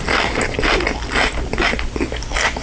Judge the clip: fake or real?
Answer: real